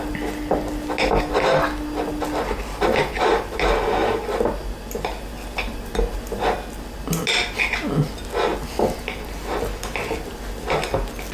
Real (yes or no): yes